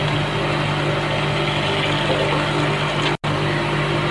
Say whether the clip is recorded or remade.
recorded